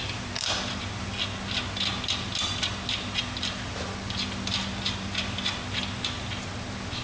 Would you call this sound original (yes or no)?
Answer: yes